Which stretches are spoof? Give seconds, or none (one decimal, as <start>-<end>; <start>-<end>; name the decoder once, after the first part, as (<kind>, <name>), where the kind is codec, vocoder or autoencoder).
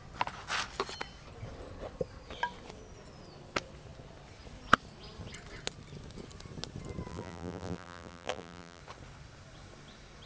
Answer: 7.1-8.8 (vocoder, BigVGAN v2)